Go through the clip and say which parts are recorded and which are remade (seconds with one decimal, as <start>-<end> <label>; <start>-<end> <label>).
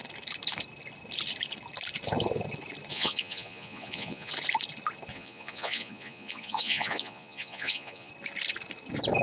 0.0-2.9 recorded; 2.9-4.3 remade; 4.3-5.1 recorded; 5.1-8.1 remade; 8.1-9.2 recorded